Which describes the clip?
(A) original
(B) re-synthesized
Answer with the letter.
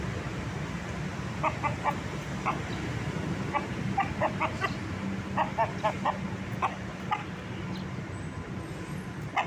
A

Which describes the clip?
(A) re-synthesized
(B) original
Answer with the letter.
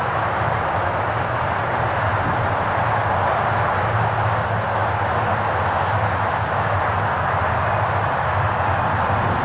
B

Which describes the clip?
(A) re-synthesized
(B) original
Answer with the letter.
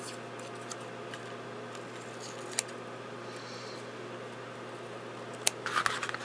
B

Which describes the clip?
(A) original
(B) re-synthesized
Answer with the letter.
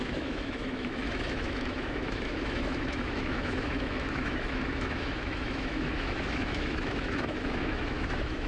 B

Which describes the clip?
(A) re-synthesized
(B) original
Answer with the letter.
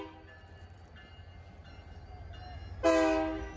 B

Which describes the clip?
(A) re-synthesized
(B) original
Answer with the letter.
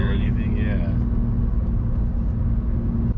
B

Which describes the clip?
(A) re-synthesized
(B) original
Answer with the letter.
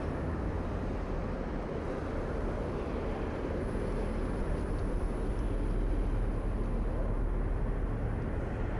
B